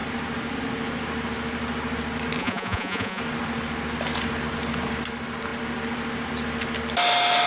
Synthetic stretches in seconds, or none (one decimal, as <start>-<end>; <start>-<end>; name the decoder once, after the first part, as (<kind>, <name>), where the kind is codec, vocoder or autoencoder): 2.4-3.2 (vocoder, Vocos)